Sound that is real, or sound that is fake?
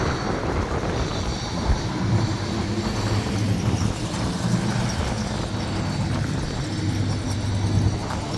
real